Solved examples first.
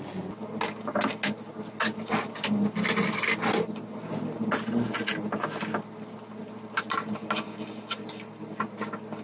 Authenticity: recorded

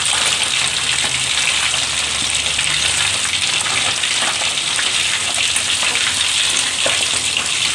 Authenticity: recorded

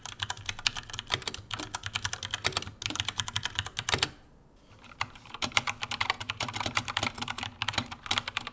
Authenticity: recorded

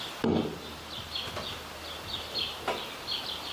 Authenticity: recorded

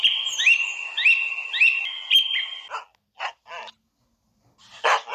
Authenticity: recorded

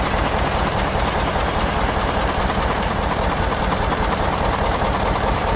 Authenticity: remade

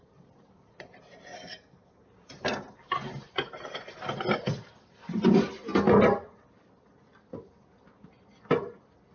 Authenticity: recorded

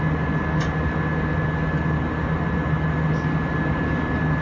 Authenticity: recorded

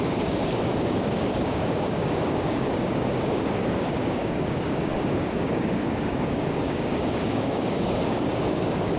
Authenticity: remade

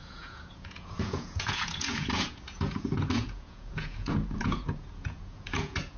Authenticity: remade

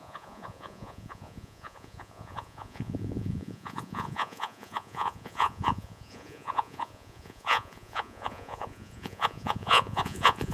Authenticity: remade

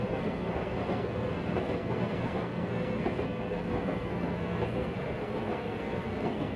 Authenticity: remade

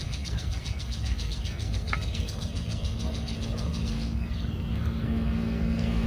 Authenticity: remade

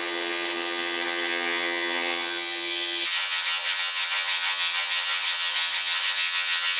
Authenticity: remade